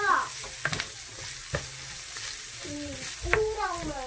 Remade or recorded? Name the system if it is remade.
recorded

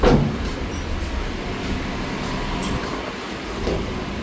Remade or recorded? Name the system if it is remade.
recorded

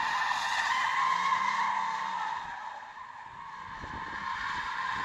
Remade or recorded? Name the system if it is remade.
recorded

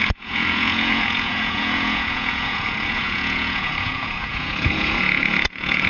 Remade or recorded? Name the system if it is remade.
remade, vocoder, Vocos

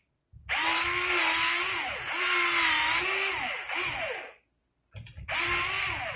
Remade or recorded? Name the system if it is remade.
recorded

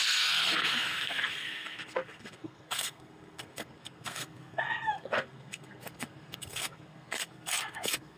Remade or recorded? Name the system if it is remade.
remade, codec, SNAC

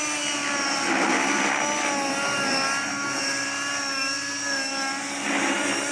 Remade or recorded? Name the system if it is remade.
recorded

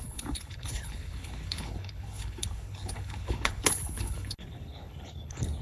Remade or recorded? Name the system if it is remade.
remade, codec, HILCodec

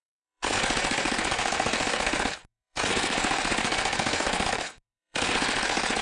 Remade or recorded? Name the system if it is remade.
remade, codec, SNAC